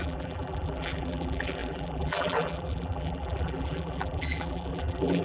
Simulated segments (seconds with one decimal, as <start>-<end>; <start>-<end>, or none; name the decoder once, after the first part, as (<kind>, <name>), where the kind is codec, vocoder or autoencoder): 0.0-5.2 (vocoder, BigVGAN v2)